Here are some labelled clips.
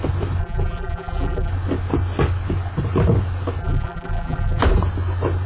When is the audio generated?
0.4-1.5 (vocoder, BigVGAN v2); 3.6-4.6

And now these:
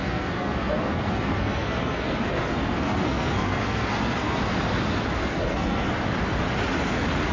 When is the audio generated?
0.0-4.4 (codec, SNAC); 5.2-5.9

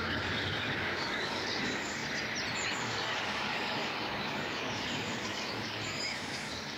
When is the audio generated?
0.0-2.0 (codec, DAC); 2.7-6.8

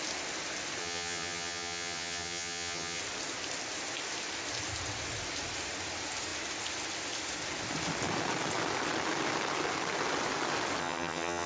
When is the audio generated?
0.8-3.0 (vocoder, HiFi-GAN); 10.8-11.5

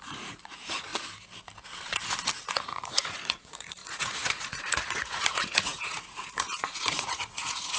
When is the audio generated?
0.0-0.9 (vocoder, Vocos); 2.5-7.8

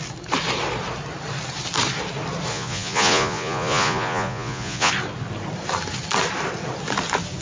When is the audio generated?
2.5-4.9 (vocoder, Vocos)